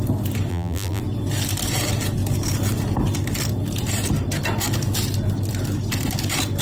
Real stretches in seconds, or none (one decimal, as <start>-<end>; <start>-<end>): 0.0-0.5; 1.0-6.6